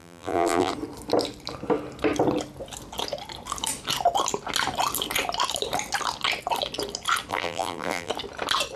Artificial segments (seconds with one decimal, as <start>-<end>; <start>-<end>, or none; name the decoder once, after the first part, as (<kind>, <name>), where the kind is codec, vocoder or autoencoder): 0.0-0.7 (vocoder, BigVGAN v2); 7.3-8.1